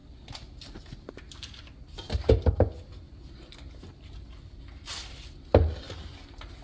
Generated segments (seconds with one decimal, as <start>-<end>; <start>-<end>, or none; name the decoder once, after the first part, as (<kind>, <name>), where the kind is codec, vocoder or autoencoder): none